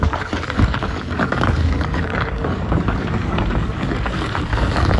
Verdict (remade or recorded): remade